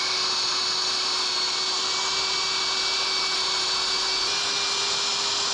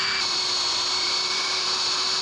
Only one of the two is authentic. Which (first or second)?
first